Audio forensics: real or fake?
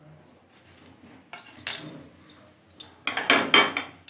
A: real